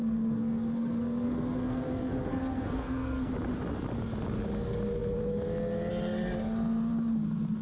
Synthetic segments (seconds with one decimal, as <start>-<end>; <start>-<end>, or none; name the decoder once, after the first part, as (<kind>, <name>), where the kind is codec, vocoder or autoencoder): 0.0-3.3 (codec, SNAC)